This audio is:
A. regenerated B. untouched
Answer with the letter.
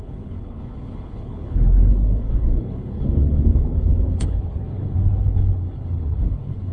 A